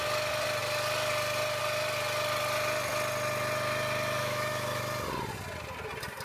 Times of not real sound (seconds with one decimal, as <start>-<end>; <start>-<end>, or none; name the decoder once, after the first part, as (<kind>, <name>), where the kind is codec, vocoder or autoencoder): 4.2-4.8 (autoencoder, DAC-VAE)